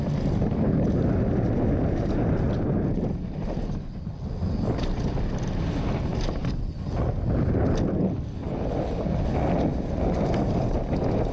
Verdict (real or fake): real